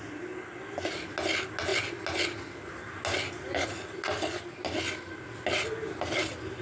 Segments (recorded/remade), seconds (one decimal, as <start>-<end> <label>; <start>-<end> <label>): 0.0-6.6 recorded